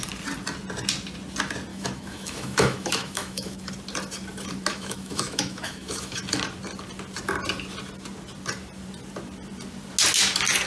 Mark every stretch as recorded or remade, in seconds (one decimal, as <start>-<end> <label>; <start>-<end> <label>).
0.0-1.7 recorded; 1.7-3.7 remade; 3.7-4.7 recorded; 4.7-6.2 remade; 6.2-10.7 recorded